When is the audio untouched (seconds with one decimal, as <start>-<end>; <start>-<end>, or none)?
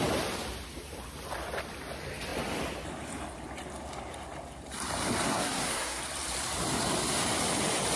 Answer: 0.0-5.3; 6.0-8.0